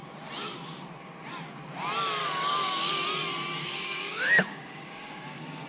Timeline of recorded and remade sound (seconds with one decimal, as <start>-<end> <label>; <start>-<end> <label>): 0.0-2.2 recorded; 2.2-2.9 remade; 2.9-3.6 recorded; 3.6-5.7 remade